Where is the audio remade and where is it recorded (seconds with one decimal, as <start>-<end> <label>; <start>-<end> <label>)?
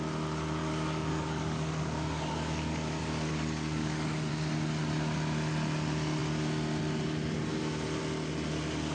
0.0-0.6 recorded; 0.6-4.3 remade; 4.3-8.9 recorded